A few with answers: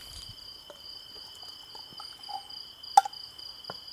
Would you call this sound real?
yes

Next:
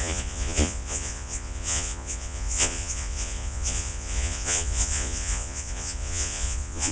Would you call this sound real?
no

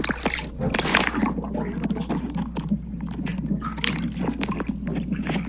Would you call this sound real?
yes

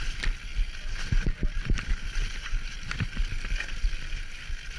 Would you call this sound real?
yes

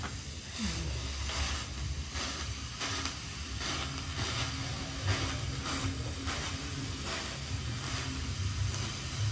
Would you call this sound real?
yes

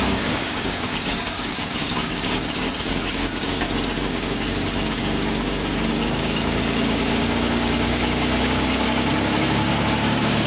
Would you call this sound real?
no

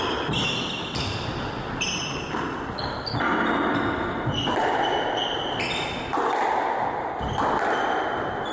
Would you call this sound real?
yes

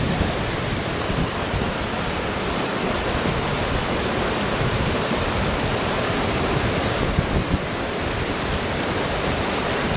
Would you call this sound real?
yes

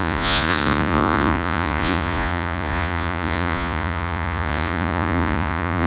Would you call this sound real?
no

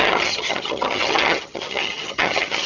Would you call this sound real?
no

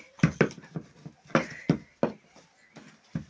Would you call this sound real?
yes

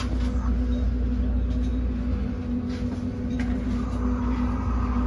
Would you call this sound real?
yes